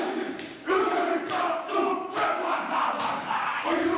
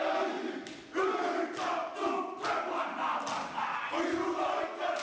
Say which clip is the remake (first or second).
first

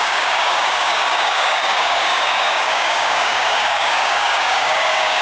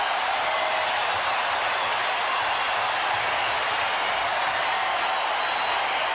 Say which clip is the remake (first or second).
first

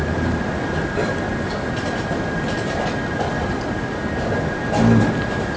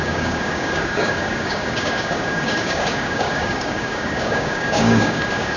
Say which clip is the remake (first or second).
second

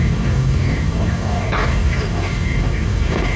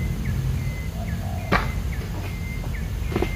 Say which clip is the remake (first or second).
first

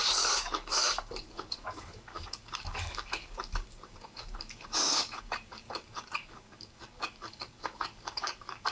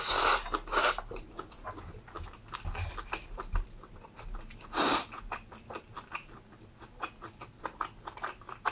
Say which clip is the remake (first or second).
first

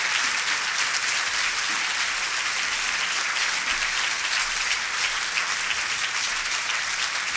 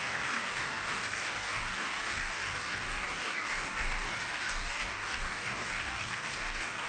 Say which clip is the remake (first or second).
second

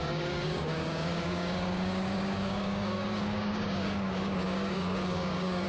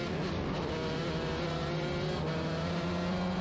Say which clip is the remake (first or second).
first